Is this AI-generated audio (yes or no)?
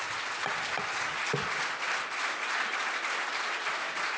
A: no